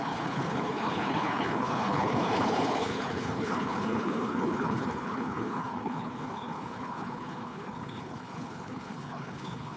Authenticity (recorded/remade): remade